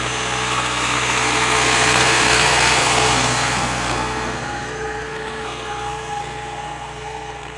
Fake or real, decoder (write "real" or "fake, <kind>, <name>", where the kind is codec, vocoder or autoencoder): fake, codec, SNAC